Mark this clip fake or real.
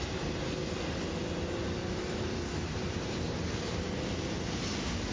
real